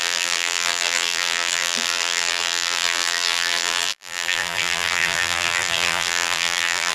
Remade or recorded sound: remade